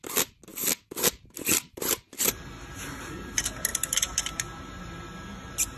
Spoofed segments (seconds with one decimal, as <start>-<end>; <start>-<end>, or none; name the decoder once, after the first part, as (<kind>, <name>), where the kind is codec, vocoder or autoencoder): none